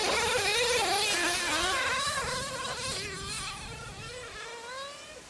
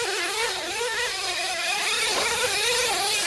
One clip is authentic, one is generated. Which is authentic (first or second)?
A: first